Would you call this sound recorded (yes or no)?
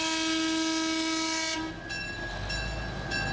yes